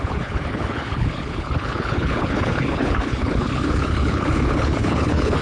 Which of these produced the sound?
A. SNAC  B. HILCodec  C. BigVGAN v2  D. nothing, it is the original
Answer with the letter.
B